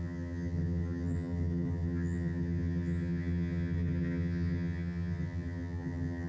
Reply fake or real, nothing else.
fake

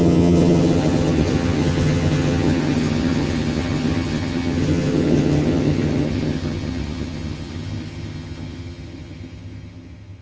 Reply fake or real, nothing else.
fake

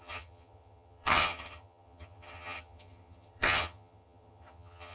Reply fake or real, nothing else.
fake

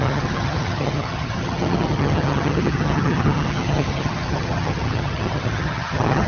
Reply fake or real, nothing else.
fake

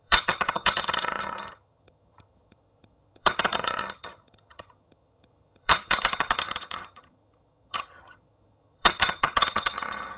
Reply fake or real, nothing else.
fake